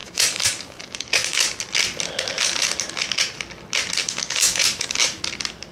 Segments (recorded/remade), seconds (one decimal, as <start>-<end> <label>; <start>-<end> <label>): 0.0-1.6 remade; 1.6-4.0 recorded; 4.0-5.2 remade; 5.2-5.7 recorded